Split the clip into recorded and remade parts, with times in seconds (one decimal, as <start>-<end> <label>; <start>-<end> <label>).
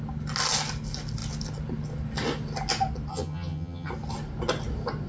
0.0-3.1 recorded; 3.1-3.9 remade; 3.9-5.1 recorded